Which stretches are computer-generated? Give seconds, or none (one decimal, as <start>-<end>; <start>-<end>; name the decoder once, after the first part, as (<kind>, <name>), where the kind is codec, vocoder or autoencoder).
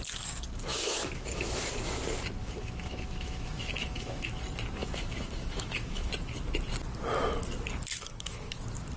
0.7-1.7 (autoencoder, DAC-VAE); 2.4-4.3; 4.8-6.1; 7.9-8.6